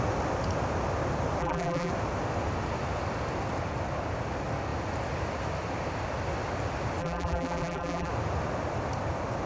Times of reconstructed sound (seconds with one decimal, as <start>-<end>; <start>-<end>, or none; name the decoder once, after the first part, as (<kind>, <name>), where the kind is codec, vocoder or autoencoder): 1.4-1.9 (vocoder, BigVGAN v2); 7.0-8.1